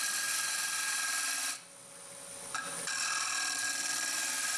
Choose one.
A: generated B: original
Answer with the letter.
B